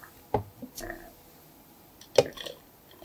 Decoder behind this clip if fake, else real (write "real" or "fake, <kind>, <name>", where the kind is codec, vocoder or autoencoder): real